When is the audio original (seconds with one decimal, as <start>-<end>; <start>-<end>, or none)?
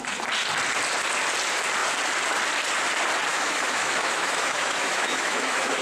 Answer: 0.0-3.3